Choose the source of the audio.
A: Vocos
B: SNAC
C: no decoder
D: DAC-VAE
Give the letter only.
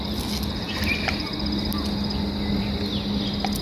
C